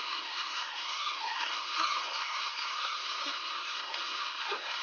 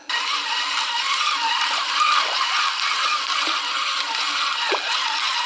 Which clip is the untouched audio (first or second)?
second